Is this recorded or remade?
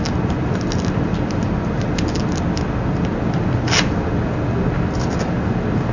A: recorded